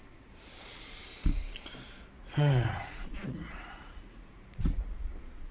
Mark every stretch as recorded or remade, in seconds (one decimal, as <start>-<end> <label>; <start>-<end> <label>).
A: 0.0-2.2 recorded; 2.2-5.5 remade